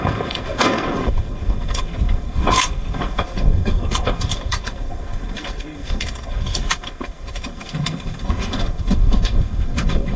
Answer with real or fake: fake